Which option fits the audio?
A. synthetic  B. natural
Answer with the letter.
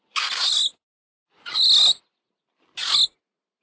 B